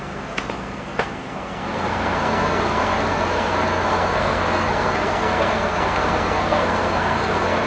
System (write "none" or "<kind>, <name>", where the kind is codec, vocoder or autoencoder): codec, SNAC